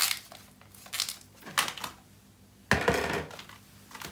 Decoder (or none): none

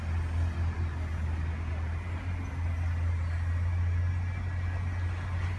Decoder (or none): none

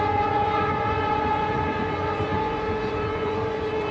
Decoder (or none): vocoder, Vocos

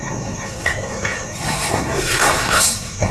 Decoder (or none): codec, SNAC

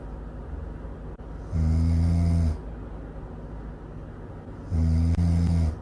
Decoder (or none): none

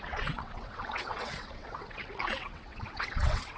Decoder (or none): vocoder, WaveNeXt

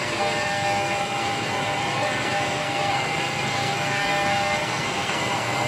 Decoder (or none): codec, SNAC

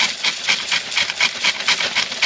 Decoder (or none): vocoder, BigVGAN v2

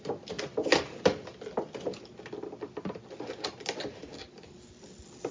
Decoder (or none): none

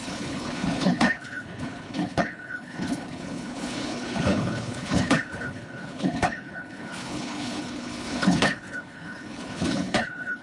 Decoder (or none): codec, HILCodec